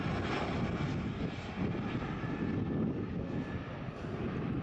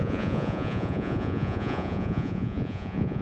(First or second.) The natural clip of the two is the first